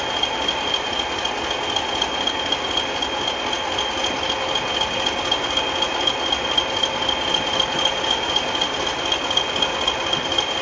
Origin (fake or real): real